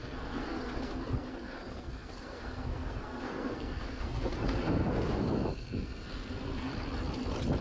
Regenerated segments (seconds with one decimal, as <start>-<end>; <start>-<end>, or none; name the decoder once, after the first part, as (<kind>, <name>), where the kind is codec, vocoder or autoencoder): 0.0-6.7 (codec, SNAC)